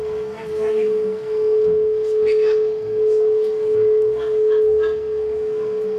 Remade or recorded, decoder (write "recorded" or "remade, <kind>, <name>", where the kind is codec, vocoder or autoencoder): remade, codec, SNAC